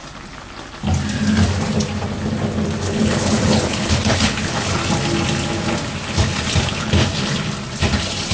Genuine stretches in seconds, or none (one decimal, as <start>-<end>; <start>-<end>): 0.0-2.8; 4.8-6.6; 7.0-8.3